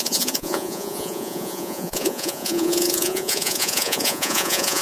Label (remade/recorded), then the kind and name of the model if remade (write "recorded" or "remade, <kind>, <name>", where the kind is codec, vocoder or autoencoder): remade, vocoder, Vocos